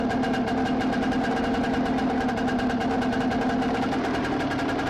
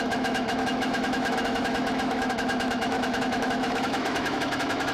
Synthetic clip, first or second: second